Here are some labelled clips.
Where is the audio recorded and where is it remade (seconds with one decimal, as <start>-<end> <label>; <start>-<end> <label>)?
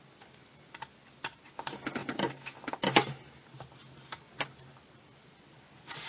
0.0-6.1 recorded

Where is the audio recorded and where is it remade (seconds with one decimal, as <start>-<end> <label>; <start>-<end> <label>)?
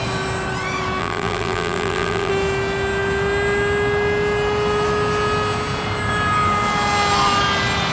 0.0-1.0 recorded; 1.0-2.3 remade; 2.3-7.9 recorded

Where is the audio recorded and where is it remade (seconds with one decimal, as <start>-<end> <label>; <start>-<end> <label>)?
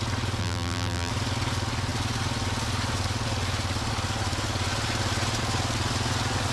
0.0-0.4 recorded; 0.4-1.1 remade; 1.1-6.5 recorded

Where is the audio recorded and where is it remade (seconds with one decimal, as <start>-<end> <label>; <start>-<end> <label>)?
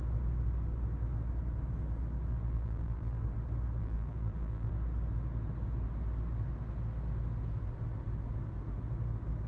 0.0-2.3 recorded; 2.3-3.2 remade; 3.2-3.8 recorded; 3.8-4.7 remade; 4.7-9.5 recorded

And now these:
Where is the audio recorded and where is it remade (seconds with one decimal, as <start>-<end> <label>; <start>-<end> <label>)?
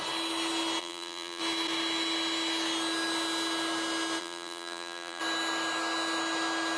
0.0-0.8 recorded; 0.8-1.4 remade; 1.4-4.2 recorded; 4.2-5.2 remade; 5.2-6.8 recorded